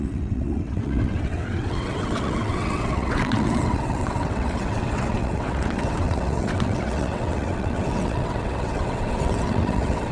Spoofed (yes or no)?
yes